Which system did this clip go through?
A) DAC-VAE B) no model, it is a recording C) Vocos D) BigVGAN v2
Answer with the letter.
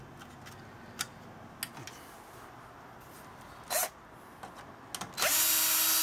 B